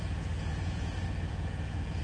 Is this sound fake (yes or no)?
yes